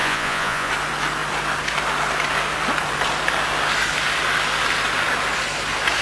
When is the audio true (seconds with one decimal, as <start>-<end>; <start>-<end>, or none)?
0.7-6.0